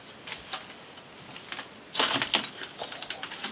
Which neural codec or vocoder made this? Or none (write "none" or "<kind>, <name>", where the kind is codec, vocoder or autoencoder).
none